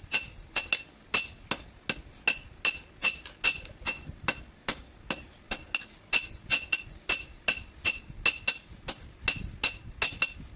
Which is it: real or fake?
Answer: real